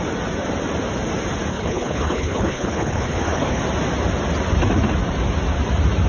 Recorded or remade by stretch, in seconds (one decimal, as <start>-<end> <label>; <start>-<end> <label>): 0.0-1.5 recorded; 1.5-3.6 remade; 3.6-6.1 recorded

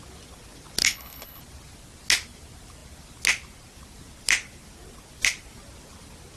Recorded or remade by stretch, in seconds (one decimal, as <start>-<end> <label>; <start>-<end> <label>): 0.0-0.8 recorded; 0.8-1.4 remade; 1.4-6.4 recorded

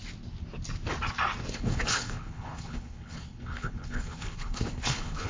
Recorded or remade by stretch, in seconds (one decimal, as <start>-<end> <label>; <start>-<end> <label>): 0.0-1.5 recorded; 1.5-5.3 remade

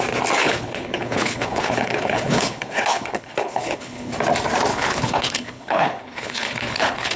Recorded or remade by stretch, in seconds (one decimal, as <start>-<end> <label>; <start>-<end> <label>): 0.0-0.4 recorded; 0.4-4.1 remade; 4.1-4.7 recorded; 4.7-7.2 remade

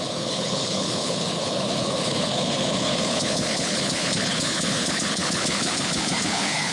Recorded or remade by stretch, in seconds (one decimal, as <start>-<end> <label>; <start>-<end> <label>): 0.0-6.7 remade

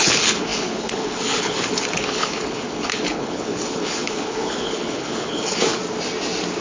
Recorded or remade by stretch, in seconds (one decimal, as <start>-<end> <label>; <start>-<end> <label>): 0.0-5.8 remade; 5.8-6.6 recorded